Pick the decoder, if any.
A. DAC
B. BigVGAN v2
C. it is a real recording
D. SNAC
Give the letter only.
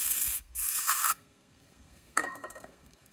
D